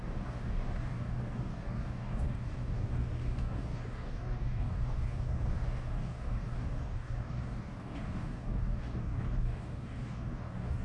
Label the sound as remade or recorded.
remade